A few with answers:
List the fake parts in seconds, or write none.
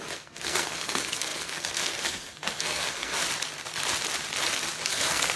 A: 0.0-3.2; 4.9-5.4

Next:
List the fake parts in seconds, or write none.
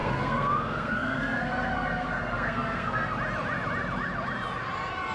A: 0.0-3.1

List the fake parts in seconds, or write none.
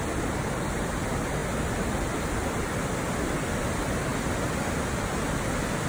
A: none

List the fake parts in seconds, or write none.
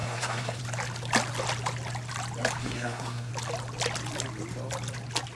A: 0.0-0.6; 2.6-3.3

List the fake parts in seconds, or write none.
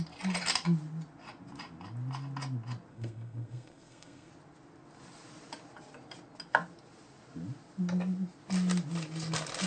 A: 2.9-4.3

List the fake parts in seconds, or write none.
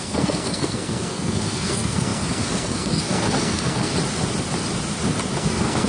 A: 0.0-3.9; 5.3-5.9